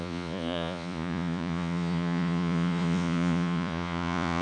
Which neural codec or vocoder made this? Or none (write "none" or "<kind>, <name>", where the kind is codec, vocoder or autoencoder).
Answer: vocoder, Vocos